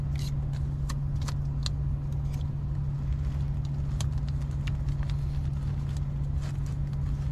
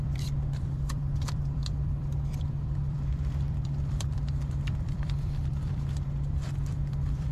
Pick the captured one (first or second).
first